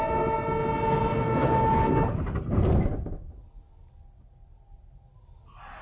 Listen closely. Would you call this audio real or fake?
real